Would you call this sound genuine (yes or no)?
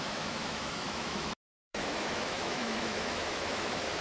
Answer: no